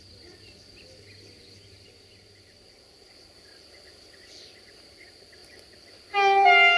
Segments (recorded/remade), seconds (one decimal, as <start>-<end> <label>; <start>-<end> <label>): 0.0-6.8 recorded